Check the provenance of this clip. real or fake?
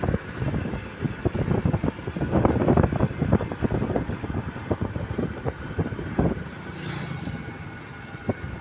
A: real